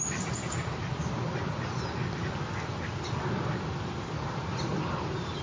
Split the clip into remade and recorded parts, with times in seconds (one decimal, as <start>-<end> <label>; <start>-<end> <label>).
0.0-5.4 recorded